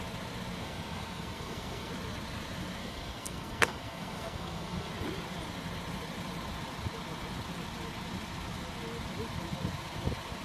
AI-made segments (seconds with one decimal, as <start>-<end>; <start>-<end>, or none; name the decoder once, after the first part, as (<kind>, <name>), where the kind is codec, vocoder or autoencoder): 0.6-1.9 (codec, SNAC); 2.8-4.9